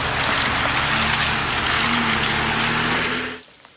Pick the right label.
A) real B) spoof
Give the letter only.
A